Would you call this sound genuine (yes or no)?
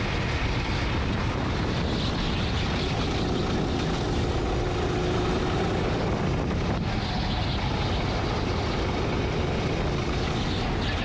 yes